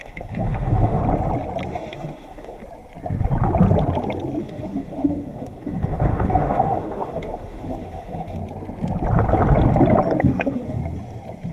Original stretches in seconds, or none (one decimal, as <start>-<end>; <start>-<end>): 1.0-1.7; 2.6-4.4; 8.4-10.2; 10.8-11.5